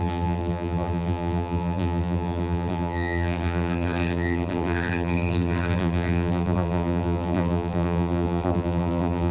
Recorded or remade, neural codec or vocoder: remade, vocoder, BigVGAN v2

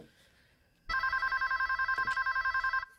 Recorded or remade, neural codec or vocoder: recorded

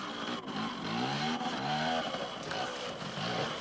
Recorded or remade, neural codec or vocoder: recorded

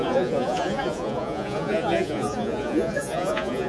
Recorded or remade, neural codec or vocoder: remade, vocoder, Vocos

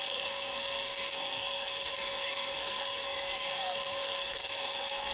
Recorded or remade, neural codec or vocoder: remade, codec, SNAC